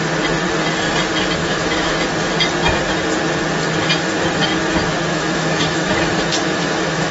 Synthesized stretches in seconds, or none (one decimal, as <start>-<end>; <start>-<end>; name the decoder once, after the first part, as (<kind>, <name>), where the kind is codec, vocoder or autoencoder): 1.4-2.0 (autoencoder, DAC-VAE); 5.1-7.1